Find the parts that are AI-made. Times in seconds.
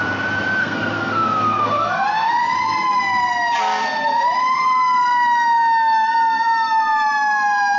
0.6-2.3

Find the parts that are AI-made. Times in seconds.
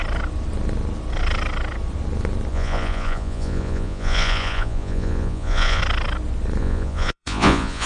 2.5-5.8; 6.6-7.9